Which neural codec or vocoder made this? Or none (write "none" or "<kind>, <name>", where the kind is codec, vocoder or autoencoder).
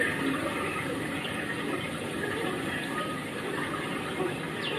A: none